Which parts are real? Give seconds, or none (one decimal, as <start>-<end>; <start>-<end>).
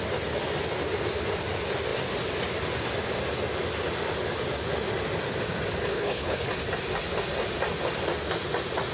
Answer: 0.0-5.9; 6.5-8.9